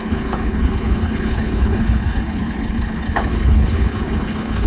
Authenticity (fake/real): fake